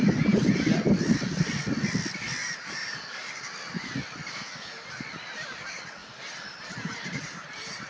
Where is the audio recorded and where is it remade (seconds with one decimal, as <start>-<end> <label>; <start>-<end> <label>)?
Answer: 0.0-2.4 recorded; 2.4-3.3 remade; 3.3-6.0 recorded; 6.0-7.9 remade